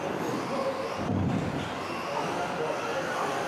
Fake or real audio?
real